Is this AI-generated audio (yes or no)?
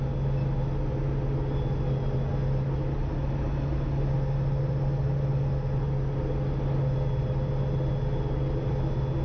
no